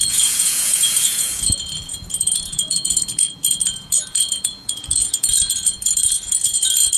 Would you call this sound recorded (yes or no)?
no